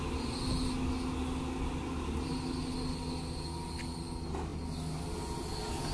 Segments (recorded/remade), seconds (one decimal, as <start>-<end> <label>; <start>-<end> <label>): 0.0-5.9 recorded